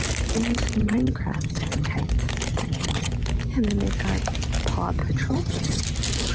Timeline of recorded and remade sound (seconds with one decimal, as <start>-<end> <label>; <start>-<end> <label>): 0.0-0.8 recorded; 0.8-2.1 remade; 2.1-2.5 recorded; 2.5-3.1 remade; 3.1-5.0 recorded; 5.0-5.8 remade; 5.8-6.3 recorded